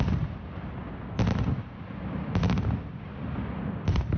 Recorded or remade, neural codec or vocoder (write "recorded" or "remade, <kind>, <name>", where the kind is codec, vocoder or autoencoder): recorded